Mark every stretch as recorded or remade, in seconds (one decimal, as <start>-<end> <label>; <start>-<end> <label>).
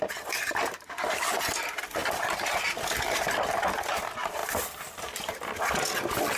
0.0-6.4 recorded